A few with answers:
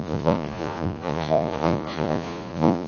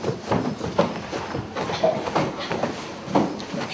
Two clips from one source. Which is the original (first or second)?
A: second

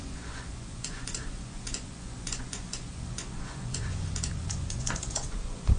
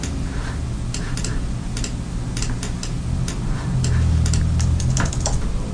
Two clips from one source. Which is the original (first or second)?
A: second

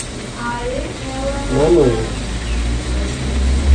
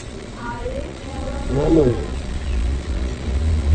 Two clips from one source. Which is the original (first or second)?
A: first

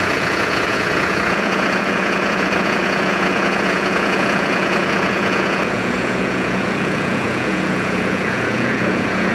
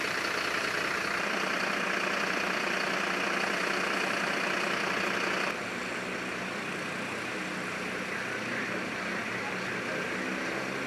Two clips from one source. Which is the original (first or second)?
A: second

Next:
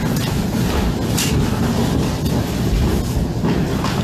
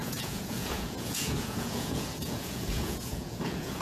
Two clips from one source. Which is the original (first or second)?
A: first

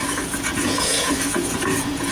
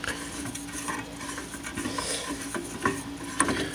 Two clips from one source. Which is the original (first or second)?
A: second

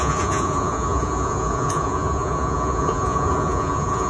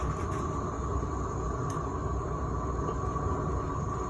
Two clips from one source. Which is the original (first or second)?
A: second